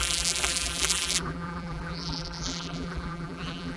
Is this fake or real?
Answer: fake